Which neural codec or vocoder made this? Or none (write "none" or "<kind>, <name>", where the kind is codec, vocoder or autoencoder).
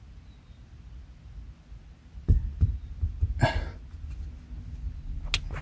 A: none